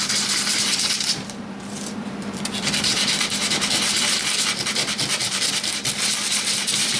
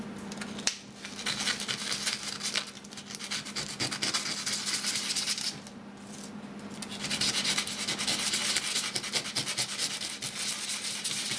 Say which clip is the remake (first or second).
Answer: first